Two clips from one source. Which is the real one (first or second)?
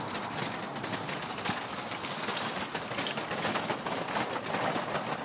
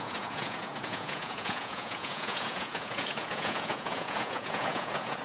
first